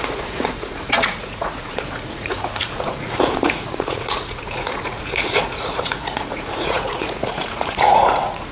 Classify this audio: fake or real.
fake